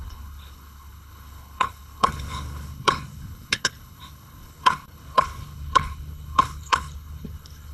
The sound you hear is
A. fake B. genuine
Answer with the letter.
A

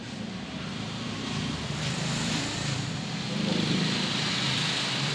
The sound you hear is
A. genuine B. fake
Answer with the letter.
B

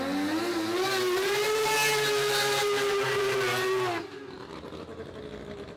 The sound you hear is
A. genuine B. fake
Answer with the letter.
A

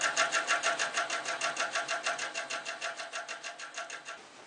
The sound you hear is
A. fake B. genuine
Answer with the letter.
B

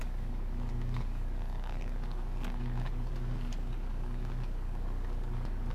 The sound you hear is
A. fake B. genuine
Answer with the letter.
A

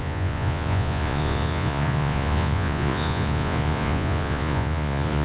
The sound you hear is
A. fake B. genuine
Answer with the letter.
A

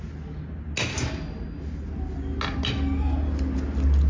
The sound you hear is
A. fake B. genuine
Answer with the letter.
B